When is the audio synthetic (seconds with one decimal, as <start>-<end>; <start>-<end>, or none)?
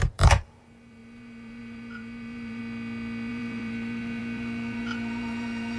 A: 0.0-2.6; 3.3-5.8